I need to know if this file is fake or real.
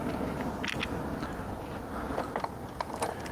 real